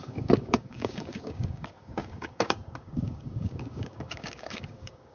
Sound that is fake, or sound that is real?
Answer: fake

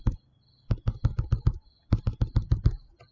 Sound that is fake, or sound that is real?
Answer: real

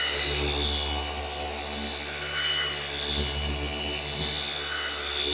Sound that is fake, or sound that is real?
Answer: real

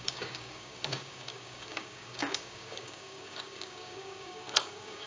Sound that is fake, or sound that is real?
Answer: fake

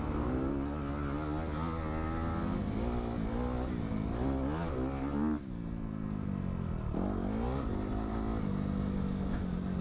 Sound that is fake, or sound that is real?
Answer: real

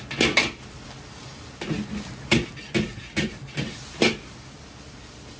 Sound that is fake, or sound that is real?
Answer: real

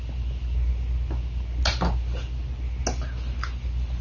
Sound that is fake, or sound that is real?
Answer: real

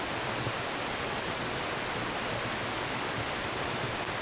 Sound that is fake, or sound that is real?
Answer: real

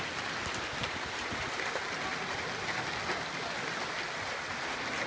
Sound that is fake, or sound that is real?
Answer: real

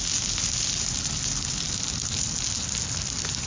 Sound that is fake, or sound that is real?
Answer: real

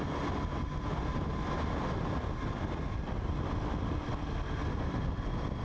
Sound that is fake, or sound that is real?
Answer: real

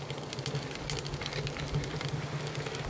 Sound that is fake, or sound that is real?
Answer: real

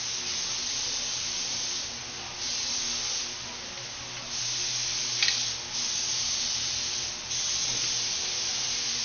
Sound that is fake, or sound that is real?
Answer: real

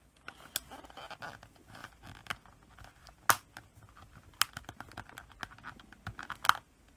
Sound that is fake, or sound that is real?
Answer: real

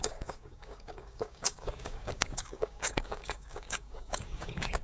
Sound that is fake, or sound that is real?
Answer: fake